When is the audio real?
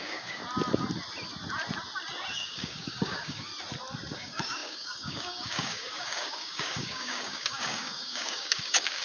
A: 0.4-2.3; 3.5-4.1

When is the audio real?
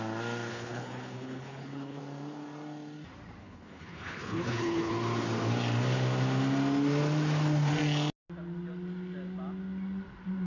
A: 0.0-0.5; 2.0-3.4; 4.9-10.5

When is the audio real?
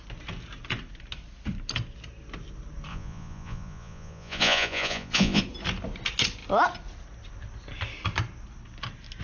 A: 0.0-2.9; 5.4-9.2